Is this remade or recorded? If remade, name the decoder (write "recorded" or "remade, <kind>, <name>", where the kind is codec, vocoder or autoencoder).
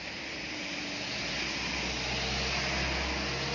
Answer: recorded